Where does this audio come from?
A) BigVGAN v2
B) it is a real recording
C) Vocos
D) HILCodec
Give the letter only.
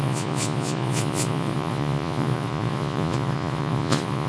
C